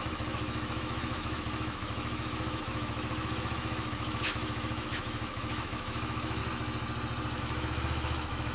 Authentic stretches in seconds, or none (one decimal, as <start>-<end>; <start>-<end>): 6.4-7.4